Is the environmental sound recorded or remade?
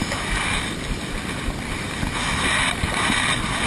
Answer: recorded